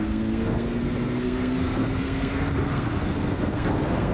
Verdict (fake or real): fake